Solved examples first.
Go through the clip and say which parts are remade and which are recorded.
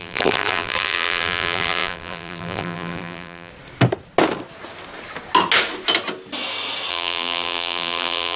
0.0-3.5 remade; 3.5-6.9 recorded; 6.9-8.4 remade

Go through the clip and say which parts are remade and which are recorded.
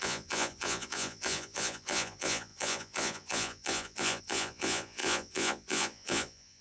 0.0-6.6 remade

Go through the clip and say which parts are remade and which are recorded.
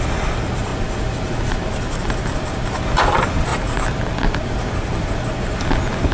0.0-6.1 recorded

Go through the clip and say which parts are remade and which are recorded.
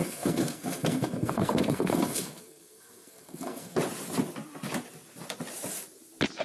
0.0-3.8 remade; 3.8-6.4 recorded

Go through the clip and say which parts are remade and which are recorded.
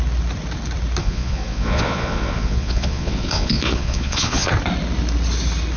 0.0-1.0 recorded; 1.0-4.5 remade; 4.5-5.8 recorded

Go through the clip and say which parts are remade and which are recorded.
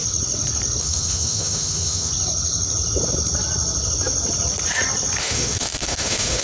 0.0-0.8 recorded; 0.8-2.1 remade; 2.1-5.2 recorded; 5.2-6.4 remade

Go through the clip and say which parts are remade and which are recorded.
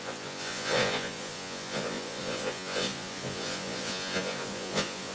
0.0-5.1 remade